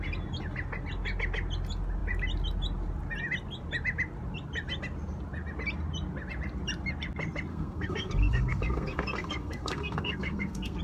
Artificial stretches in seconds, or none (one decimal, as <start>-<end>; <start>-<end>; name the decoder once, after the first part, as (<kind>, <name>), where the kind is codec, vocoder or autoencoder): 7.5-10.8 (codec, SNAC)